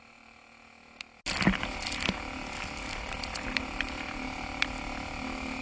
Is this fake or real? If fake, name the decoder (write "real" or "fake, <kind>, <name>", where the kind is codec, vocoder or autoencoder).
real